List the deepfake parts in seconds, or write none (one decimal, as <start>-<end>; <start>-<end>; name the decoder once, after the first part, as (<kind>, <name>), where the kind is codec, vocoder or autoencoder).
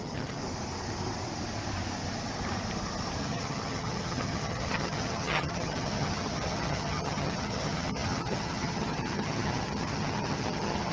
0.0-0.4 (vocoder, HiFi-GAN); 3.2-10.9